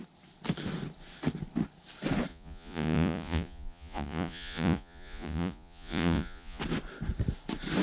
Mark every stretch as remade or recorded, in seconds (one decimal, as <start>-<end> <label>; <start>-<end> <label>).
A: 0.0-2.3 recorded; 2.3-6.6 remade; 6.6-7.8 recorded